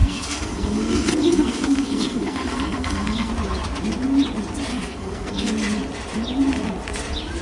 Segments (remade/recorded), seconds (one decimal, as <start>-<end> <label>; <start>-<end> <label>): 0.0-3.3 remade; 3.3-4.7 recorded; 4.7-5.5 remade; 5.5-7.4 recorded